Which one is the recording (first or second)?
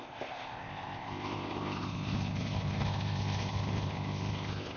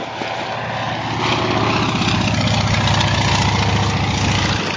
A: second